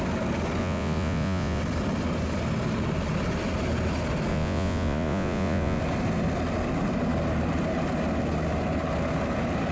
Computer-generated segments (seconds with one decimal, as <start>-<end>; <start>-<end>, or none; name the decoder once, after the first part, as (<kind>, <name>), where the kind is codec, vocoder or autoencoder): 0.6-1.6 (vocoder, Vocos); 4.3-5.8